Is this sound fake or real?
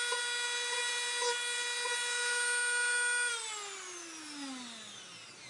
real